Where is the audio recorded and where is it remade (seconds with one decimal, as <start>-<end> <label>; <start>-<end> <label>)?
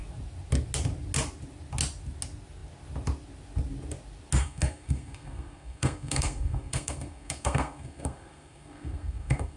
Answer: 0.0-4.4 recorded; 4.4-9.6 remade